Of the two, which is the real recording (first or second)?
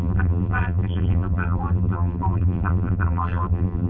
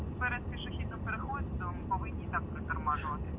second